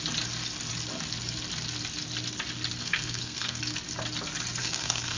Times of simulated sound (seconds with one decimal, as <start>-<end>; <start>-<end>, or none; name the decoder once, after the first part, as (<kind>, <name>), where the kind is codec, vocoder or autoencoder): 2.8-3.6 (codec, SNAC); 4.6-5.2